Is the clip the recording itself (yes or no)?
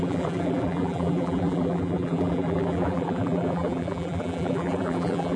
no